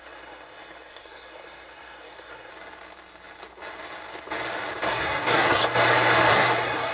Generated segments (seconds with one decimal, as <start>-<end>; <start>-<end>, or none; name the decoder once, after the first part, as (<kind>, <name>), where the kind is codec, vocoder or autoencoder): 0.0-2.5 (codec, SNAC); 4.9-5.6; 6.3-6.9